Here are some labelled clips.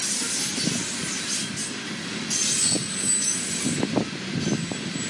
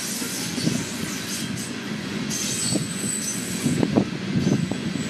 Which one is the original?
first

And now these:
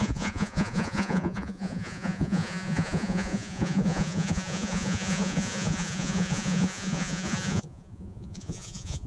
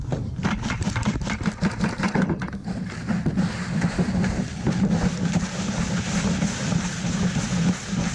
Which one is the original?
second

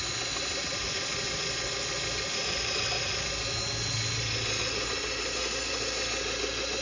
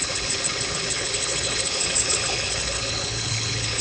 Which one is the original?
first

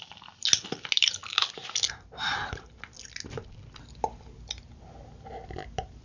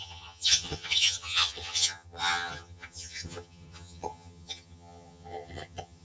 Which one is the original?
first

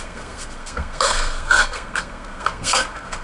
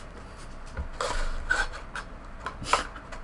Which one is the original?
second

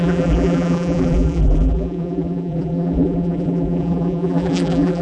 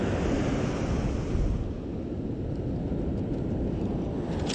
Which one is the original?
second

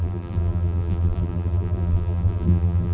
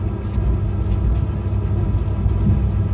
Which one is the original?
second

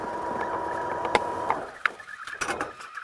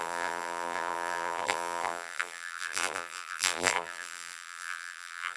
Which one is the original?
first